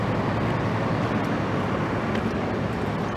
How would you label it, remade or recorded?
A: recorded